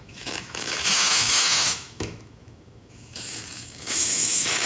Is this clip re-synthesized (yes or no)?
yes